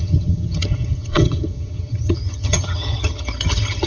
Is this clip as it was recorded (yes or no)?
no